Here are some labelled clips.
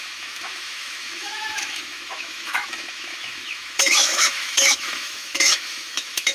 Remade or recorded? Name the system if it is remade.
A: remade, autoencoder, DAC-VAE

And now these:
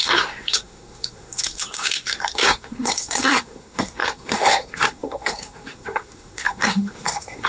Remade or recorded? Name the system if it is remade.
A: remade, codec, SNAC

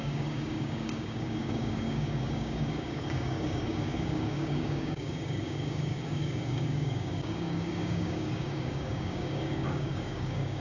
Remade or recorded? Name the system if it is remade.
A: remade, codec, DAC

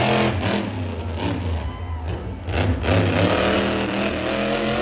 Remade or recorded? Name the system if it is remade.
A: recorded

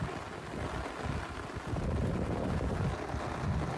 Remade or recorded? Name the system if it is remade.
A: recorded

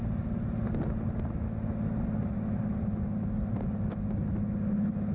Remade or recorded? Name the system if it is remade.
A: recorded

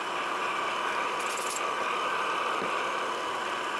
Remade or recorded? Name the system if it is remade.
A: remade, vocoder, BigVGAN v2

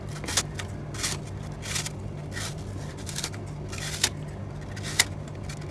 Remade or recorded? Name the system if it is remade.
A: recorded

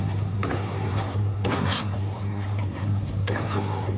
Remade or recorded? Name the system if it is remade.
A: remade, codec, SNAC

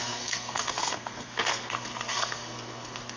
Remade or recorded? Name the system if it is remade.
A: remade, codec, SNAC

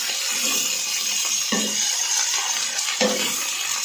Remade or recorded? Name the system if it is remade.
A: recorded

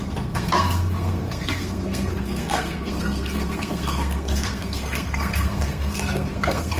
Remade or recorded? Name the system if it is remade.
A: remade, codec, SNAC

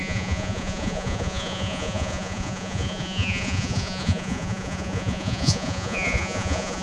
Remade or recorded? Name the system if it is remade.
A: remade, vocoder, Vocos